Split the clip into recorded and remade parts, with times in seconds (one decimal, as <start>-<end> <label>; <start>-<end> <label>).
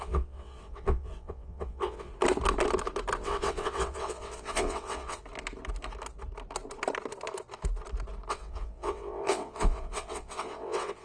0.0-2.1 remade; 2.1-3.2 recorded; 3.2-5.2 remade; 5.2-8.3 recorded; 8.3-11.0 remade